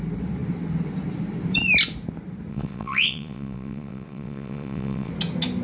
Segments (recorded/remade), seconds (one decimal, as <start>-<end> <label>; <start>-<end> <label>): 0.0-2.5 recorded; 2.5-5.1 remade; 5.1-5.6 recorded